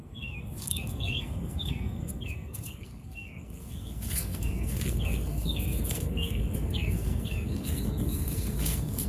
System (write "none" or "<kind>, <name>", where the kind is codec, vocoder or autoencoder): codec, SNAC